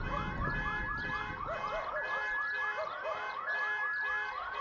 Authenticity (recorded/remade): recorded